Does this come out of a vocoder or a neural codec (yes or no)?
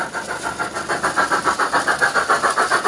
no